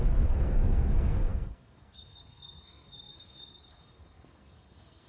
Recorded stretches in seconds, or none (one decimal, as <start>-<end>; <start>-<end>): none